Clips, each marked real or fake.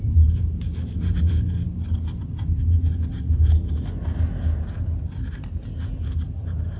real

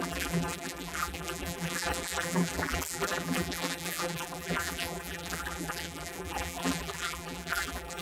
fake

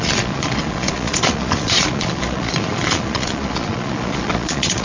fake